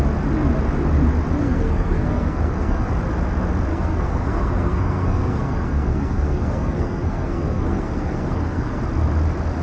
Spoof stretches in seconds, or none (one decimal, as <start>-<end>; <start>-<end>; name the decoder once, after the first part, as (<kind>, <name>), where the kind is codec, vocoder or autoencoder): 1.4-2.9 (codec, SNAC); 3.7-8.8